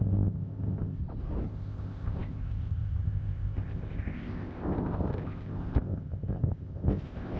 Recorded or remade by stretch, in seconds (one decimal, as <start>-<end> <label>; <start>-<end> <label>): 0.0-1.0 remade; 1.0-1.5 recorded; 1.5-7.4 remade